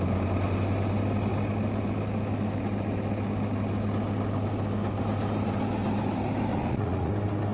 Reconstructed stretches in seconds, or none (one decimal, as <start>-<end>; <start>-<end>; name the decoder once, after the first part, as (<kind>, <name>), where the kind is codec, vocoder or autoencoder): 6.5-7.1 (vocoder, Vocos)